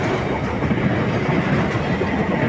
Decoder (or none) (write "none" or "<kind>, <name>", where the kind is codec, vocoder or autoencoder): none